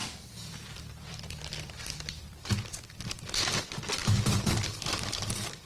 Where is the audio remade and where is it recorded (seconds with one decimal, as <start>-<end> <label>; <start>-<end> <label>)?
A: 0.0-3.4 remade; 3.4-4.0 recorded; 4.0-5.7 remade